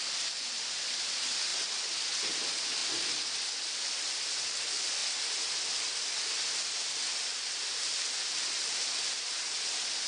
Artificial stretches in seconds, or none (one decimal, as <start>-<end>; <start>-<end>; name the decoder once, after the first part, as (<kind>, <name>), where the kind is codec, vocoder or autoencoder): none